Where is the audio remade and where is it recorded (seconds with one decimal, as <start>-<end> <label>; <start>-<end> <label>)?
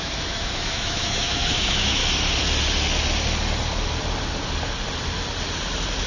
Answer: 0.0-2.0 remade; 2.0-6.1 recorded